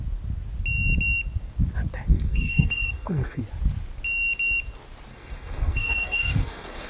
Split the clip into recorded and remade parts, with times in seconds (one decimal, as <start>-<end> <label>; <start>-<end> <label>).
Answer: 0.0-2.1 recorded; 2.1-3.4 remade; 3.4-5.1 recorded; 5.1-6.9 remade